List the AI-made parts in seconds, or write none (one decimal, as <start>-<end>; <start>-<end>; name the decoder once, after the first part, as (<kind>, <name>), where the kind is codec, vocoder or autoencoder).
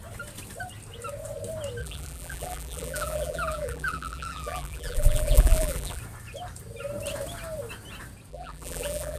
1.8-6.0 (vocoder, BigVGAN v2); 8.3-9.2